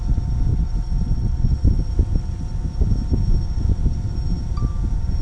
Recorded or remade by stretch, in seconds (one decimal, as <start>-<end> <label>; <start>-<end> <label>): 0.0-0.5 recorded; 0.5-1.9 remade; 1.9-5.2 recorded